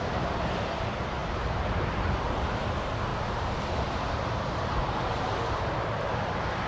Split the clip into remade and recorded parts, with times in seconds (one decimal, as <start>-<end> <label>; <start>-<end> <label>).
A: 0.0-1.2 recorded; 1.2-2.6 remade; 2.6-3.1 recorded; 3.1-5.3 remade; 5.3-6.7 recorded